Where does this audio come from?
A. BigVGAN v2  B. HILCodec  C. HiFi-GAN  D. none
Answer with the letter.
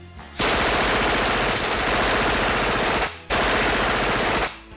D